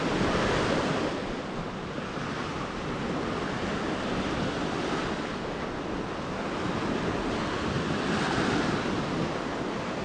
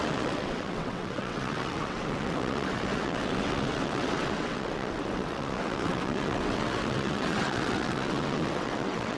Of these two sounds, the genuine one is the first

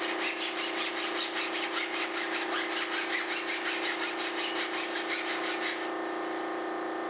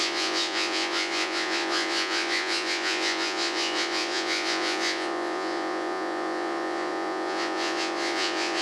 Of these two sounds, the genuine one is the first